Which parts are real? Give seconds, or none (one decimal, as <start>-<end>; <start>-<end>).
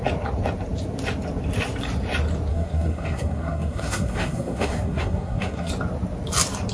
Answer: 0.0-2.5; 5.7-6.7